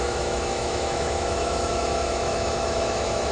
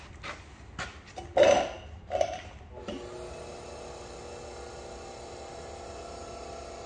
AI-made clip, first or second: first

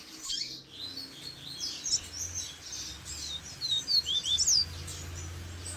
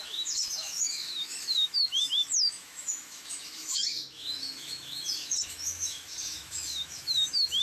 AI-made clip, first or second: second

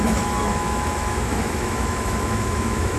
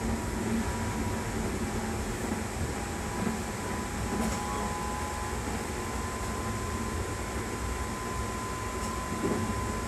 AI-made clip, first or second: first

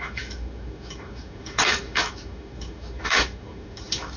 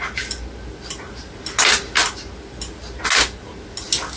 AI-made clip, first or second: first